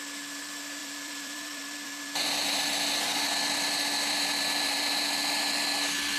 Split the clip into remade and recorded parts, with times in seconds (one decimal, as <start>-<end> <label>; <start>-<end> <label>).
0.0-0.8 recorded; 0.8-2.1 remade; 2.1-6.2 recorded